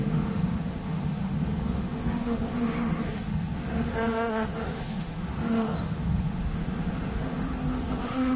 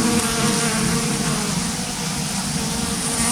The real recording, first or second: second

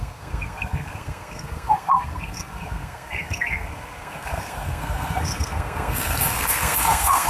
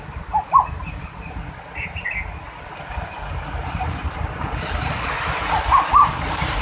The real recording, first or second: second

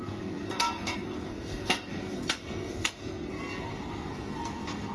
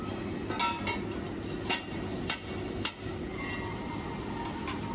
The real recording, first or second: second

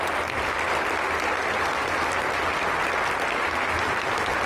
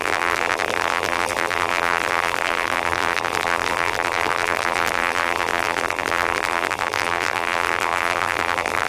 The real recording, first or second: first